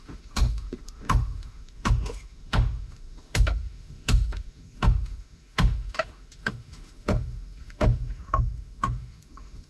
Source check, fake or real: fake